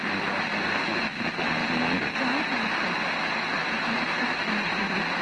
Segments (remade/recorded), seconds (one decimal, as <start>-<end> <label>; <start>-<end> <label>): 0.0-5.2 recorded